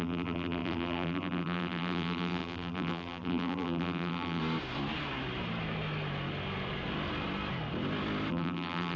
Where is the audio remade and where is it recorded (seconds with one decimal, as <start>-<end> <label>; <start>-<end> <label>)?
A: 0.0-4.4 remade; 4.4-8.3 recorded; 8.3-9.0 remade